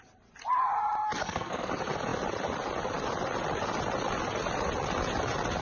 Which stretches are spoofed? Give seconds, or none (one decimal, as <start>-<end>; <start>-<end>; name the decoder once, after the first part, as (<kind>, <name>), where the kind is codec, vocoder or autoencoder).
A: 1.2-1.7 (codec, SNAC)